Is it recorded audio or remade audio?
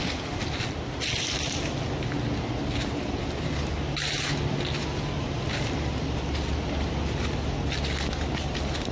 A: recorded